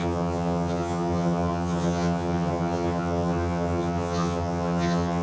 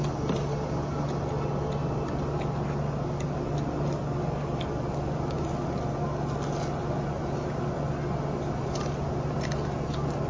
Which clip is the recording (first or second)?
second